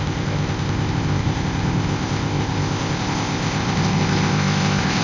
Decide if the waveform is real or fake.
fake